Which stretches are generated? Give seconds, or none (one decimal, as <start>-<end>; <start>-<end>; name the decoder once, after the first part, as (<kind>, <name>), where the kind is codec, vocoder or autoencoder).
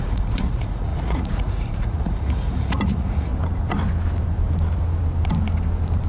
0.0-3.3 (vocoder, Vocos)